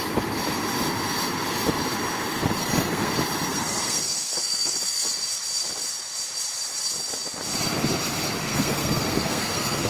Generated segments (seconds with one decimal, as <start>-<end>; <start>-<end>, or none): 2.6-3.1; 3.5-5.1; 8.4-9.9